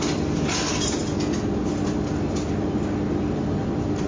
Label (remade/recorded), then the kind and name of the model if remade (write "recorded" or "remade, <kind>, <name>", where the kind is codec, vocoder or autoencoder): recorded